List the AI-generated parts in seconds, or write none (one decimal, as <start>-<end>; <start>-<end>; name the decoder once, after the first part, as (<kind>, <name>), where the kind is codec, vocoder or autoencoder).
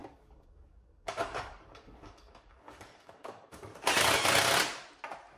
0.0-3.7 (codec, DAC)